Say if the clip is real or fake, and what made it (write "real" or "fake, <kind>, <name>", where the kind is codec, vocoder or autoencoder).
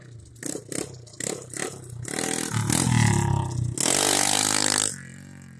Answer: real